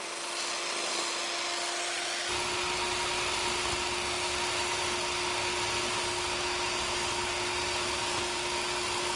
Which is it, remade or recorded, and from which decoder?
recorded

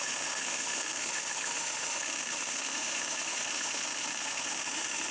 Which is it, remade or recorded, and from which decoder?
remade, autoencoder, DAC-VAE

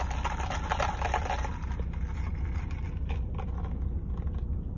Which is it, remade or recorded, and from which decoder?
recorded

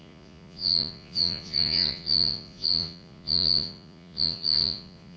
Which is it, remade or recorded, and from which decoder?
remade, vocoder, Vocos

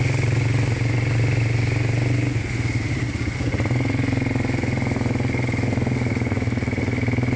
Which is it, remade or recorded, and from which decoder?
recorded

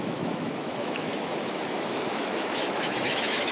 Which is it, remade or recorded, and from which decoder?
remade, autoencoder, DAC-VAE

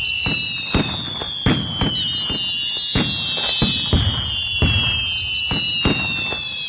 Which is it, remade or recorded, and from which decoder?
recorded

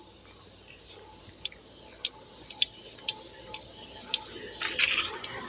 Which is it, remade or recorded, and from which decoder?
recorded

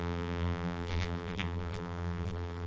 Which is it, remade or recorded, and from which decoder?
remade, vocoder, BigVGAN v2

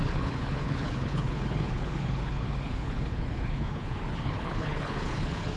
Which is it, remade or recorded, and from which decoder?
remade, codec, HILCodec